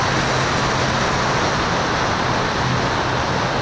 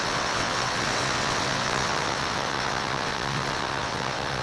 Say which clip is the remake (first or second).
second